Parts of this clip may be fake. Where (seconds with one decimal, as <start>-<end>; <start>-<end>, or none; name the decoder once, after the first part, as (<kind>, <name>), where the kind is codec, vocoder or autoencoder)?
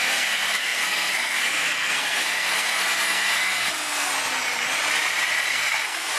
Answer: 0.0-4.1 (codec, SNAC); 5.5-6.2